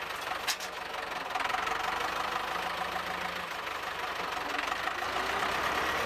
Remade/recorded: recorded